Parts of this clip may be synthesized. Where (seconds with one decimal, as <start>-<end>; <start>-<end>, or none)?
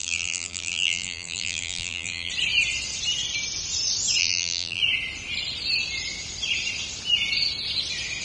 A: 0.0-2.3; 4.2-4.8